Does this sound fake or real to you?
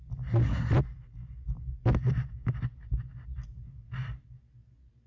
real